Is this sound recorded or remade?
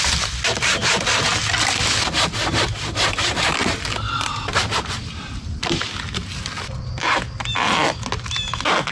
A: recorded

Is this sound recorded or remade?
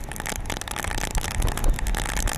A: recorded